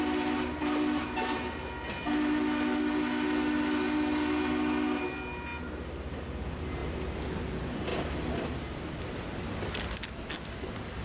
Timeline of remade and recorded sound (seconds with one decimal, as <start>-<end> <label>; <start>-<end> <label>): 0.0-11.0 recorded